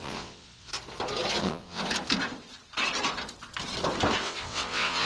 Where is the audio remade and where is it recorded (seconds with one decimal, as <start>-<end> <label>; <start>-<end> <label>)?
0.0-0.7 remade; 0.7-1.4 recorded; 1.4-1.8 remade; 1.8-4.2 recorded; 4.2-5.1 remade